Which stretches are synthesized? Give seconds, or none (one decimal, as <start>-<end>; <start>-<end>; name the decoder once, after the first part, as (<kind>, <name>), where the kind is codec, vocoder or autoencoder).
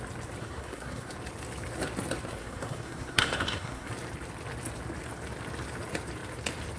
0.4-1.1 (codec, SNAC); 2.4-3.9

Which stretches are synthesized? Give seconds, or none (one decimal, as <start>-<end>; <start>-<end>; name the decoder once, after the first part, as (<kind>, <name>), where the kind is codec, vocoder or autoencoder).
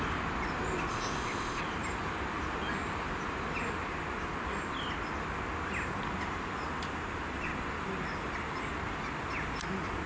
0.9-1.6 (codec, ZipCodec)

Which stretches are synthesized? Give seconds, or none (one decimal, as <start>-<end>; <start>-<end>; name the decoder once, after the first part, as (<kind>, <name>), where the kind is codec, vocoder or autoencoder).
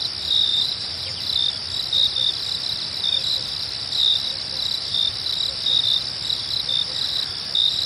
0.5-1.2 (vocoder, BigVGAN v2)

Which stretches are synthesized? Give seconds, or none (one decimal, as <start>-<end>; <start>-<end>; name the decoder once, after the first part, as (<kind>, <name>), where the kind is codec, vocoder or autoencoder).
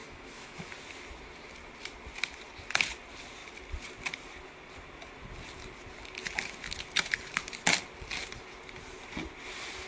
0.0-0.7 (autoencoder, DAC-VAE)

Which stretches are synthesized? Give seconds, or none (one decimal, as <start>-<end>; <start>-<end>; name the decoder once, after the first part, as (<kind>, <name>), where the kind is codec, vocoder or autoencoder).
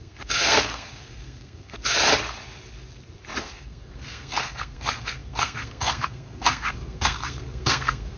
0.0-1.8 (codec, SNAC); 3.4-8.2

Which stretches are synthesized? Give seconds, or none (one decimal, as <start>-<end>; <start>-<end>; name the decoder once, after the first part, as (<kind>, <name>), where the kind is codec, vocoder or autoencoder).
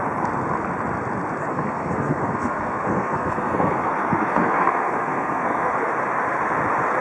1.5-5.7 (codec, SNAC)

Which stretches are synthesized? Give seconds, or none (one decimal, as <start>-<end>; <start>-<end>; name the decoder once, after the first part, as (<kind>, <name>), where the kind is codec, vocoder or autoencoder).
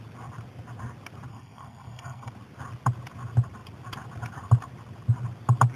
1.3-2.3 (codec, SNAC)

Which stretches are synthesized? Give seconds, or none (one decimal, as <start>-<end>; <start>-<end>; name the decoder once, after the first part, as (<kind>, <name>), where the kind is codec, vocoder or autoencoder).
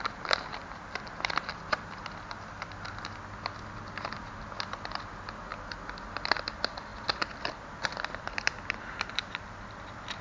none